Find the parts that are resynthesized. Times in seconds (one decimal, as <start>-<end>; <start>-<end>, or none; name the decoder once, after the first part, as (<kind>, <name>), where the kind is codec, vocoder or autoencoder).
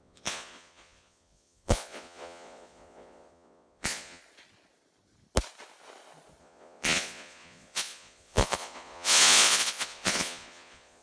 0.0-4.2 (vocoder, Vocos); 6.4-11.0